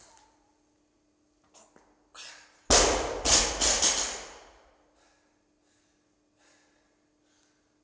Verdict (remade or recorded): recorded